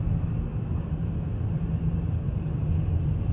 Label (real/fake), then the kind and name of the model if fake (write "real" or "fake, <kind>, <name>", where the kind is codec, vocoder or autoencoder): real